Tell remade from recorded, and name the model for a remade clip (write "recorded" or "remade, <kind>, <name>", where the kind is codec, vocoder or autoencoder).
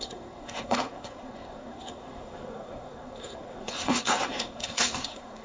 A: remade, codec, SNAC